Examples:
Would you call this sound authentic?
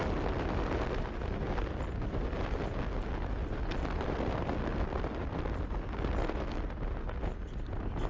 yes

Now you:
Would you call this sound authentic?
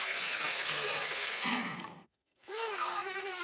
no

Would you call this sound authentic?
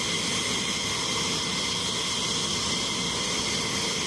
yes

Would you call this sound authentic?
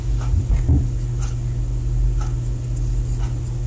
yes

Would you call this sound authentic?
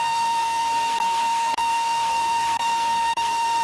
no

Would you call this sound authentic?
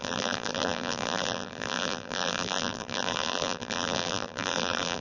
no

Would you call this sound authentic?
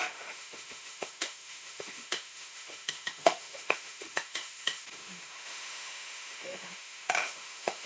no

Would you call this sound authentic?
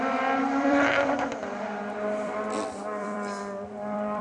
no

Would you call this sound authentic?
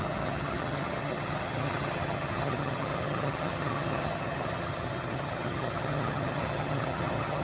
no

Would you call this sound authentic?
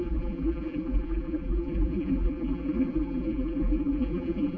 no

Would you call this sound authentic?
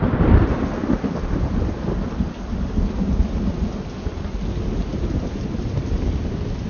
yes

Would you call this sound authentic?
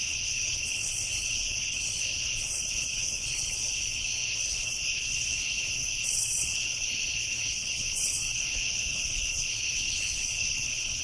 no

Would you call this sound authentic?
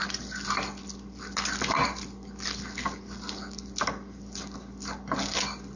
yes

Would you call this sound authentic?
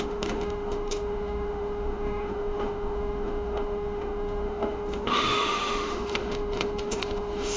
no